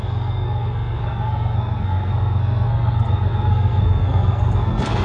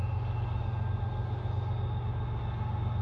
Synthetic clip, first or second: first